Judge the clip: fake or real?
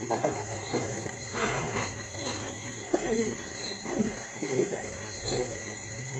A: fake